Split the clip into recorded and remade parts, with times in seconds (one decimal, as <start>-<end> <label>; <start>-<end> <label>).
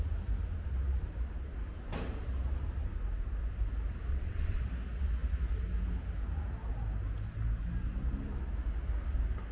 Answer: 0.0-4.1 recorded; 4.1-4.6 remade; 4.6-9.5 recorded